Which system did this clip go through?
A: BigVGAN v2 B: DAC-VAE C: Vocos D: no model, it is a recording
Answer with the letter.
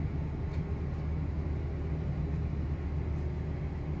D